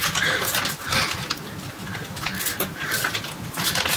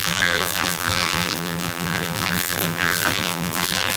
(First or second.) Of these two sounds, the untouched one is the first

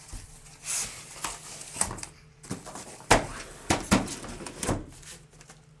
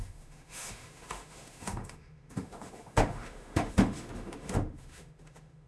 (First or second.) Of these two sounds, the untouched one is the first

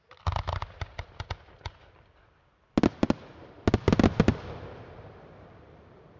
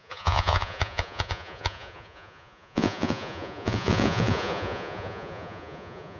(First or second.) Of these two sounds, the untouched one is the first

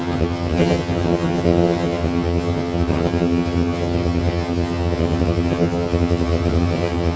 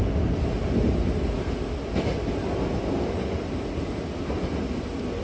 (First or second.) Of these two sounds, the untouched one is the second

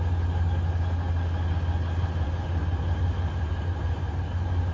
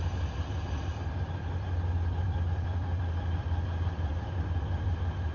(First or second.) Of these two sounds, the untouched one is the first